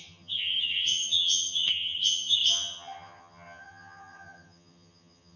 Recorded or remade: remade